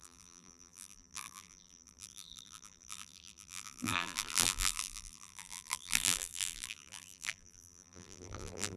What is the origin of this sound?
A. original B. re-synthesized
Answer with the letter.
B